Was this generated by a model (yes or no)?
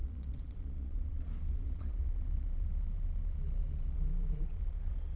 yes